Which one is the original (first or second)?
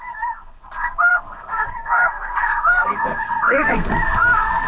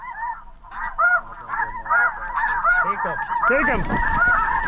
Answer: second